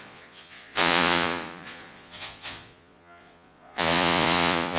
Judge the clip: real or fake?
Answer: fake